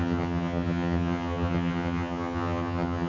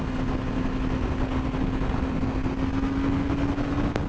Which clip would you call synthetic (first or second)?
first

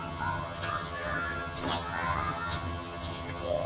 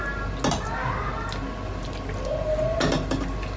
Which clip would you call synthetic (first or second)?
first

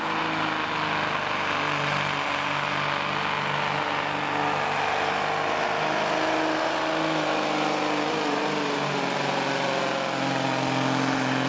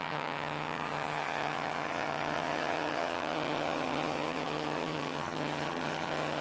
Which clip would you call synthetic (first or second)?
second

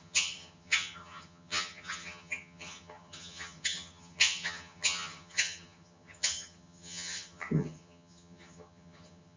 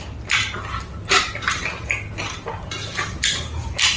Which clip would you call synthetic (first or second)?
first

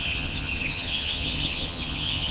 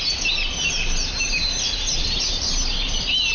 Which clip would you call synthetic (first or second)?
first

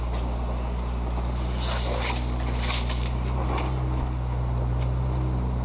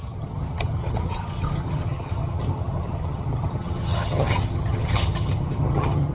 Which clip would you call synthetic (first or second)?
second